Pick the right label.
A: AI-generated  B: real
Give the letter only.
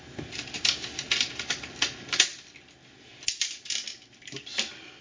B